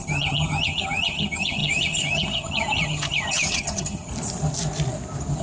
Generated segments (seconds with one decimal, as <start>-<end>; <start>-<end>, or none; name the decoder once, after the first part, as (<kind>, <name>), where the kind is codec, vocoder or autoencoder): 0.0-4.1 (vocoder, HiFi-GAN)